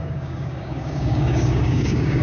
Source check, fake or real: fake